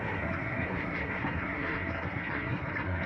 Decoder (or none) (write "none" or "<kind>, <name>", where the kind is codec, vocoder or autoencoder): codec, SNAC